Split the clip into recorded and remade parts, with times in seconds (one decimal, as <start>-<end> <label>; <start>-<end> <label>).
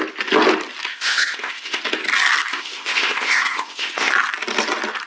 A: 0.0-0.9 recorded; 0.9-1.8 remade; 1.8-2.5 recorded; 2.5-4.1 remade; 4.1-5.1 recorded